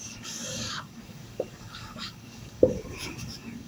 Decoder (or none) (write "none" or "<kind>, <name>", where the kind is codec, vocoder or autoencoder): codec, DAC